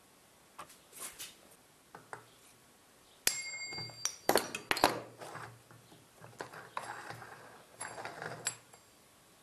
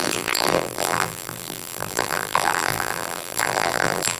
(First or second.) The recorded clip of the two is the first